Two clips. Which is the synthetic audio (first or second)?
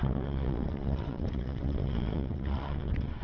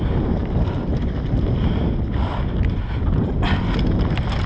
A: first